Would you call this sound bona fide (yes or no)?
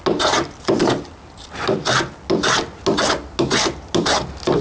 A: yes